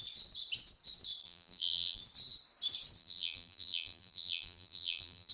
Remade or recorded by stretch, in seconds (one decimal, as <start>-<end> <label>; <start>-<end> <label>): 0.0-1.2 recorded; 1.2-2.0 remade; 2.0-3.0 recorded; 3.0-5.3 remade